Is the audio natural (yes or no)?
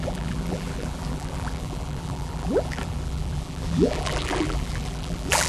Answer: no